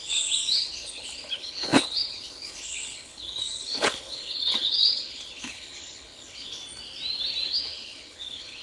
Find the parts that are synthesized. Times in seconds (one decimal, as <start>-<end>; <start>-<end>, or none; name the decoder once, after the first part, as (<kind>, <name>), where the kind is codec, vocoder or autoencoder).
0.0-6.6 (codec, HILCodec); 7.5-8.6